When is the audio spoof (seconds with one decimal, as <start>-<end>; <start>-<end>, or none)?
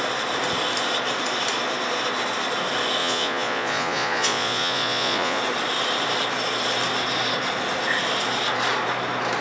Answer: 3.0-5.4